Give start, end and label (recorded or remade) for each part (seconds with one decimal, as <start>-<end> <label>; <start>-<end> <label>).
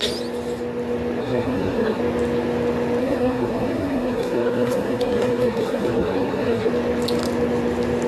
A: 0.0-1.2 recorded; 1.2-2.0 remade; 2.0-3.0 recorded; 3.0-6.7 remade; 6.7-8.1 recorded